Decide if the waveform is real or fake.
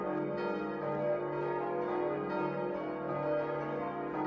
real